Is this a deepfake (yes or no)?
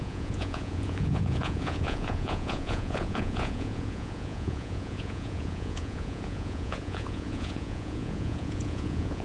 yes